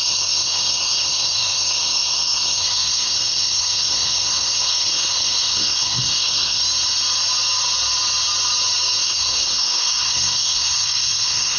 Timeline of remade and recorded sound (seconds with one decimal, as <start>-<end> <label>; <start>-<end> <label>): 0.0-6.6 remade; 6.6-9.0 recorded; 9.0-11.6 remade